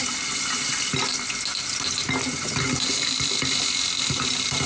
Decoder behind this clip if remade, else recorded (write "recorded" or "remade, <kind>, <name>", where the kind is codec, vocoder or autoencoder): recorded